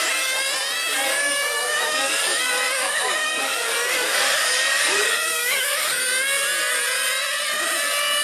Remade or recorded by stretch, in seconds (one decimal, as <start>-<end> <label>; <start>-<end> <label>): 0.0-1.1 recorded; 1.1-6.0 remade; 6.0-8.2 recorded